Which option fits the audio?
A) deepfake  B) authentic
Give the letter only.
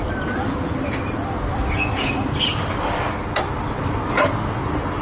B